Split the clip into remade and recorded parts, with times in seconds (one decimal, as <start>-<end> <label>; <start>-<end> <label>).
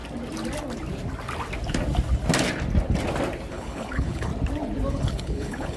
0.0-3.5 recorded; 3.5-4.3 remade; 4.3-4.9 recorded; 4.9-5.8 remade